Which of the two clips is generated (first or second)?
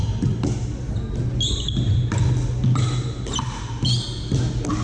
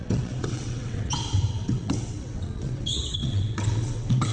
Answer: second